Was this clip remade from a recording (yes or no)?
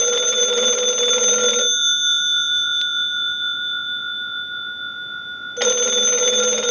no